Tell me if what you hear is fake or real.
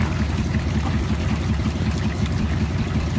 real